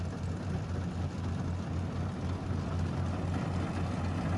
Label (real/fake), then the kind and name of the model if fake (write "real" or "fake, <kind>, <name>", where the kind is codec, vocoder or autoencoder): real